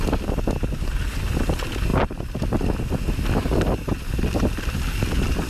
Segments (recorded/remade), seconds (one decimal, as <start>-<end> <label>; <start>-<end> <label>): 0.0-5.5 recorded